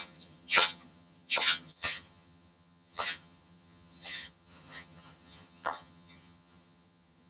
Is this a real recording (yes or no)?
no